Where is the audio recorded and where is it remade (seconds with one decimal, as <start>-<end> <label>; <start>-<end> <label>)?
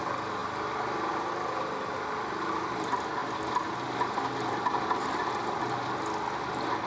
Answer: 0.0-6.9 recorded